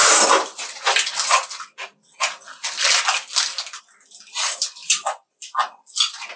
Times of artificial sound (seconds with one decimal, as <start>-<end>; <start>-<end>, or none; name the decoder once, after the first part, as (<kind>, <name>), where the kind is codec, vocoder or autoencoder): none